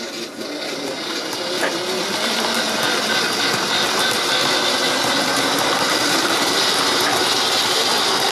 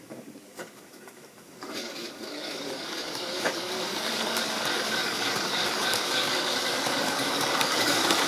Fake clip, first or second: second